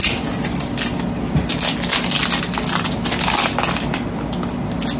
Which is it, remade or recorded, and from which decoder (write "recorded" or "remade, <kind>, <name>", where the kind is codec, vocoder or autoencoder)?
recorded